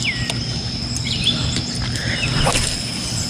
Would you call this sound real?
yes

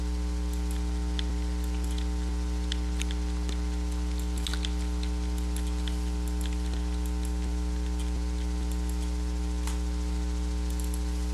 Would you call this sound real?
yes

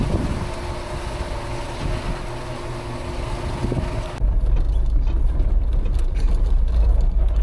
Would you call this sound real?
yes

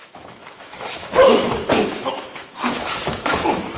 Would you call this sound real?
no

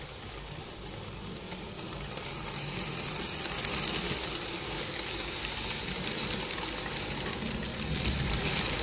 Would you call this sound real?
yes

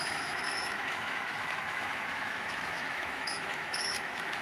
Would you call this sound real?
no